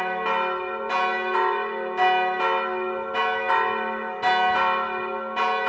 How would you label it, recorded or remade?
recorded